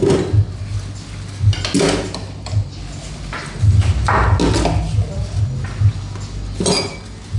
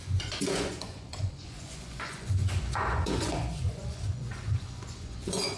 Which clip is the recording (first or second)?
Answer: first